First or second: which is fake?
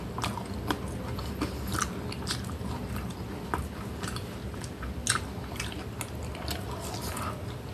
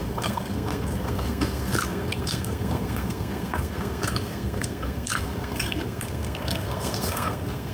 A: second